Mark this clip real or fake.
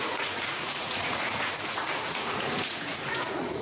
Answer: fake